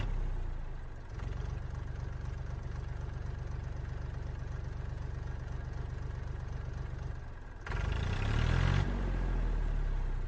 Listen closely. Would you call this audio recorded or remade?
recorded